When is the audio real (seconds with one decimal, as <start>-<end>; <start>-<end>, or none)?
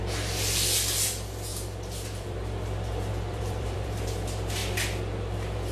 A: 0.0-1.5; 4.0-5.7